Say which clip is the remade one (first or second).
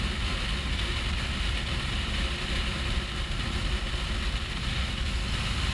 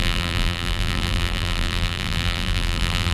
second